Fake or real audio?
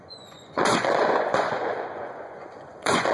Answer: fake